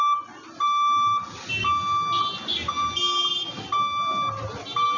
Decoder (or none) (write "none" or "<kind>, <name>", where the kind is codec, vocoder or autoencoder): none